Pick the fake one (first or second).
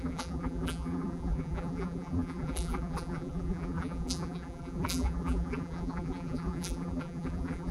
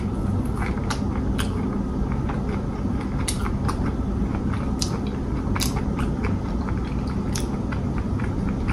first